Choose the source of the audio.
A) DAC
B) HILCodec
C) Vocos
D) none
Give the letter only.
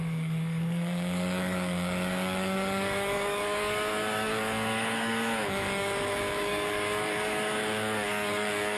A